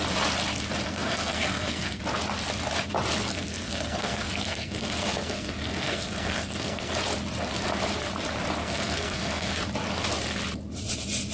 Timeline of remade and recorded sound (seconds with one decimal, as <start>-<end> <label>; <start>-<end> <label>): 0.0-0.9 recorded; 0.9-2.0 remade; 2.0-3.3 recorded; 3.3-6.9 remade; 6.9-8.6 recorded; 8.6-9.6 remade; 9.6-11.3 recorded

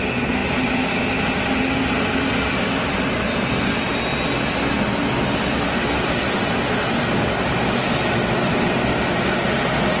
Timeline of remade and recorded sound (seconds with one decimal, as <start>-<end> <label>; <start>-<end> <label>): 0.0-10.0 recorded

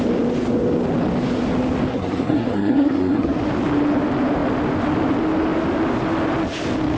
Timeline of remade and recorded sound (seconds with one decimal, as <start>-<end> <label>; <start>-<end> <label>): 0.0-1.9 recorded; 1.9-3.4 remade; 3.4-7.0 recorded

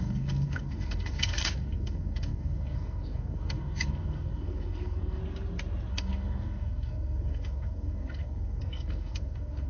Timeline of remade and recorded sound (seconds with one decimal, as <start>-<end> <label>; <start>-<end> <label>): 0.0-5.2 remade; 5.2-5.9 recorded; 5.9-9.7 remade

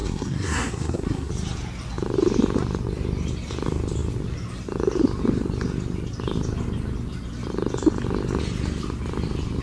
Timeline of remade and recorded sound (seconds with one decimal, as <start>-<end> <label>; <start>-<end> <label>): 0.0-1.3 remade; 1.3-9.6 recorded

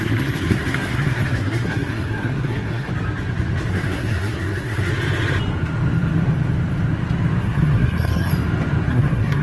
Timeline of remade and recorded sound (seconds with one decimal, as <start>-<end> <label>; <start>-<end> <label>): 0.0-2.9 remade; 2.9-3.7 recorded; 3.7-4.9 remade; 4.9-7.4 recorded; 7.4-8.3 remade; 8.3-8.9 recorded; 8.9-9.4 remade